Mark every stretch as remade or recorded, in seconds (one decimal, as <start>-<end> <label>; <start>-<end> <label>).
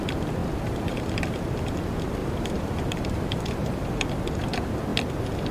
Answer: 0.0-0.4 recorded; 0.4-1.4 remade; 1.4-2.2 recorded; 2.2-3.9 remade; 3.9-5.5 recorded